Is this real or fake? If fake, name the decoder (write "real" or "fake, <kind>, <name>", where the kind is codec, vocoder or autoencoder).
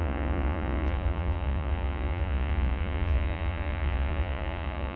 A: fake, vocoder, Vocos